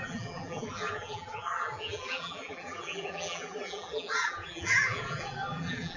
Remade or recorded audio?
remade